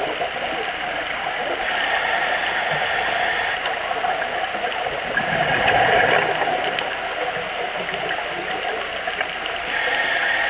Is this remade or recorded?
recorded